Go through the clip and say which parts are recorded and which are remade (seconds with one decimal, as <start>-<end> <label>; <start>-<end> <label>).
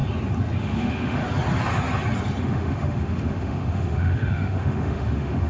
0.0-0.6 recorded; 0.6-1.2 remade; 1.2-2.4 recorded; 2.4-5.5 remade